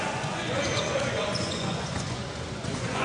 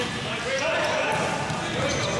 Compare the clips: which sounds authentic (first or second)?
second